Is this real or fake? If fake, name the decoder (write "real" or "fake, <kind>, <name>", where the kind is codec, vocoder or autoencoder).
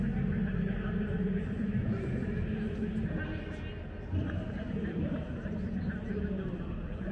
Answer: real